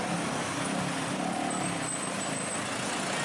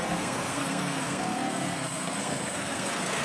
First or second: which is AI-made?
second